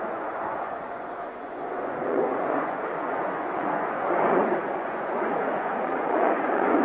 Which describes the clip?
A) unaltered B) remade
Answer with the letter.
B